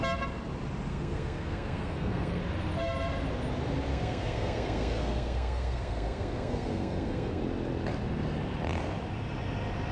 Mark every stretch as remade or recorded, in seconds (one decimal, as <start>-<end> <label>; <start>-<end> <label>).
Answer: 0.0-0.9 recorded; 0.9-2.4 remade; 2.4-3.9 recorded; 3.9-7.4 remade; 7.4-9.9 recorded